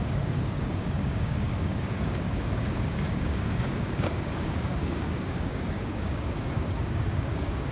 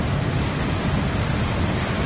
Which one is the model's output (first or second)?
first